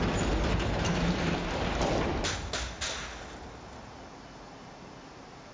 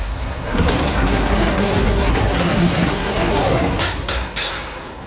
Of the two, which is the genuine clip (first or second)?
first